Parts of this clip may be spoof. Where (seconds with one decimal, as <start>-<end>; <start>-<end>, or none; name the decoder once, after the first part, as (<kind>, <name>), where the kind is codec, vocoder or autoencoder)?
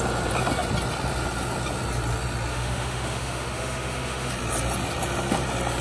2.5-4.3 (autoencoder, DAC-VAE)